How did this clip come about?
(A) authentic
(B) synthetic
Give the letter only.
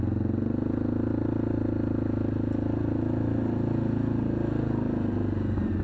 A